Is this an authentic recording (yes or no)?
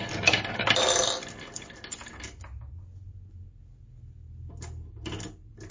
yes